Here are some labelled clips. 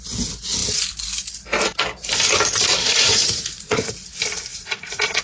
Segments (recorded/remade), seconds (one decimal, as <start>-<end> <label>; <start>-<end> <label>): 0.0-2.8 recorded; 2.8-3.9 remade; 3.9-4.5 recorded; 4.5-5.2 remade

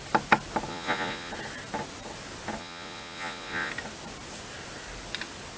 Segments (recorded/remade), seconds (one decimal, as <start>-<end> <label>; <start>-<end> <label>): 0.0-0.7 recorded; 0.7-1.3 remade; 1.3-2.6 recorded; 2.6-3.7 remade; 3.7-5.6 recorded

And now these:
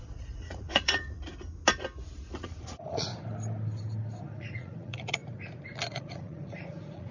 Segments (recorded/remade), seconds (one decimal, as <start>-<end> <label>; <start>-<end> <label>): 0.0-1.2 remade; 1.2-2.3 recorded; 2.3-3.1 remade; 3.1-4.2 recorded; 4.2-5.2 remade; 5.2-5.9 recorded; 5.9-7.1 remade